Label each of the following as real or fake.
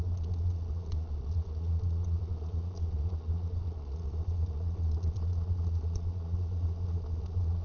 fake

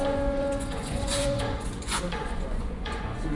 fake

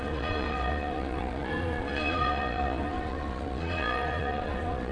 fake